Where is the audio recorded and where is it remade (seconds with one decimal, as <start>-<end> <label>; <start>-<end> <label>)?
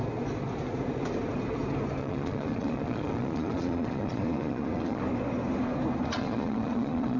0.0-2.0 recorded; 2.0-5.0 remade; 5.0-6.1 recorded; 6.1-7.2 remade